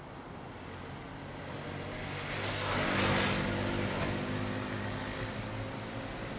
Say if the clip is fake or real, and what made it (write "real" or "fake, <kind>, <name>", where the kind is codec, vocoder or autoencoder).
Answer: real